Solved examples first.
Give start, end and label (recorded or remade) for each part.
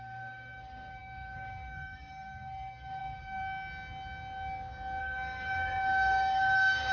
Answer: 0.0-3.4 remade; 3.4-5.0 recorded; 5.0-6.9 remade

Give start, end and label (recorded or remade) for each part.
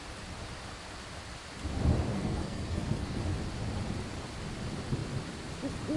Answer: 0.0-2.1 recorded; 2.1-3.2 remade; 3.2-6.0 recorded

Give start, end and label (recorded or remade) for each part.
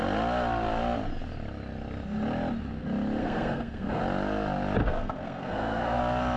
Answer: 0.0-3.2 recorded; 3.2-4.0 remade; 4.0-4.8 recorded; 4.8-6.0 remade; 6.0-6.4 recorded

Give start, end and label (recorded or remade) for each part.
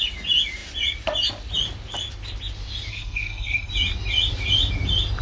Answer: 0.0-2.9 recorded; 2.9-3.7 remade; 3.7-5.2 recorded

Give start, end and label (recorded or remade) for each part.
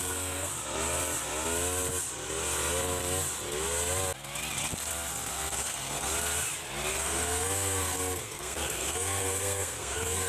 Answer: 0.0-0.5 remade; 0.5-5.3 recorded; 5.3-6.1 remade; 6.1-6.9 recorded; 6.9-10.3 remade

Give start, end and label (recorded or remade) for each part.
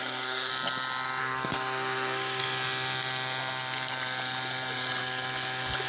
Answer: 0.0-0.5 remade; 0.5-1.2 recorded; 1.2-2.4 remade; 2.4-5.9 recorded